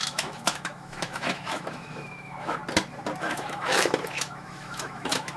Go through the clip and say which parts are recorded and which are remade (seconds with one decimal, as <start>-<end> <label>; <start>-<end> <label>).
0.0-2.6 remade; 2.6-3.2 recorded; 3.2-5.4 remade